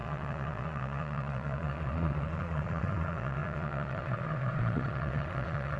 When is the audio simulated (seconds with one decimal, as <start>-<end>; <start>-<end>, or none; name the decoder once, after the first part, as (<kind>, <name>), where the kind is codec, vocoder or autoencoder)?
0.0-5.8 (vocoder, Vocos)